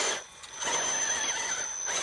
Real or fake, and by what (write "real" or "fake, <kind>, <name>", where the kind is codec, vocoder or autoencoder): fake, vocoder, Vocos